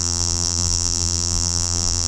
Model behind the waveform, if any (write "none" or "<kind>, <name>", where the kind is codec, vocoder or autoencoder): vocoder, BigVGAN v2